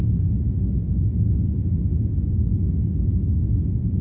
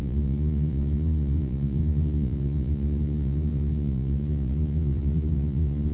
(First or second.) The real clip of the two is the first